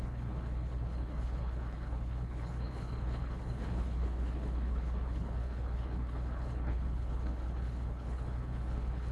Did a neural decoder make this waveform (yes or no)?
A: yes